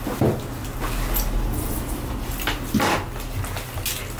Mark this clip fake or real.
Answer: real